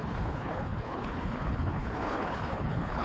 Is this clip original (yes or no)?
no